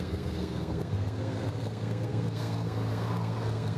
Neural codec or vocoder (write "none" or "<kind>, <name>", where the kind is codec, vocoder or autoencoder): codec, SNAC